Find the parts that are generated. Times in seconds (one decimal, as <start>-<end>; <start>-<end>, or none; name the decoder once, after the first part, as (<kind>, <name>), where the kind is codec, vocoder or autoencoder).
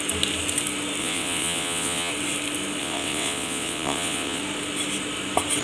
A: 1.0-2.1 (vocoder, WaveNeXt); 2.8-4.4